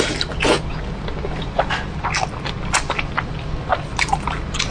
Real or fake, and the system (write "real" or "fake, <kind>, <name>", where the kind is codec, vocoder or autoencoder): real